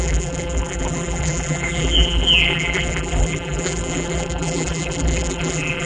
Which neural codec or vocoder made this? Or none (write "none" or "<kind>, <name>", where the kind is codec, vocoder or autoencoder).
vocoder, BigVGAN v2